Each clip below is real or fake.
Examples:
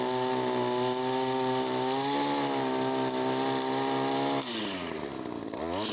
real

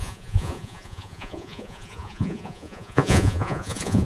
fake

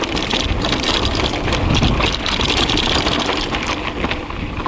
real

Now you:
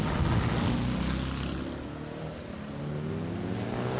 real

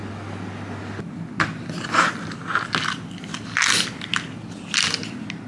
real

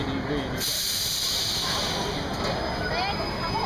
real